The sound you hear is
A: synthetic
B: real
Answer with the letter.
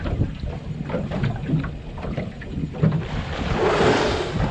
B